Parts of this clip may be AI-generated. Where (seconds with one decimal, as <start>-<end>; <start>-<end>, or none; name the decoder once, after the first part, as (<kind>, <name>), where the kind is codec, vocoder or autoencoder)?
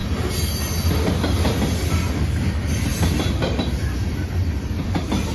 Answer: 2.9-3.8 (vocoder, BigVGAN v2)